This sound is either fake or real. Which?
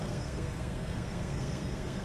fake